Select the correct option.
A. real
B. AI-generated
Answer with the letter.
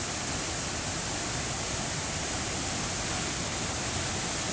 A